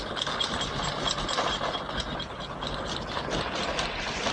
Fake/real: real